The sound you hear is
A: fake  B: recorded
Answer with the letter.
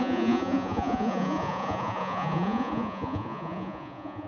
A